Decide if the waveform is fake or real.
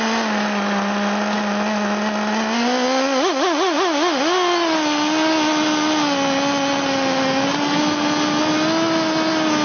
real